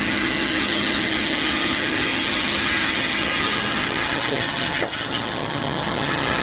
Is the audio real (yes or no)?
no